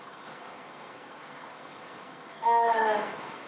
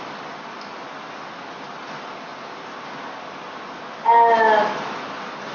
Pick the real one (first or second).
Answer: second